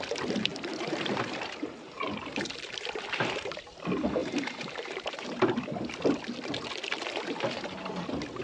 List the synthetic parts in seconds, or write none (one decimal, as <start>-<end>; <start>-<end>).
0.5-3.7; 4.2-5.6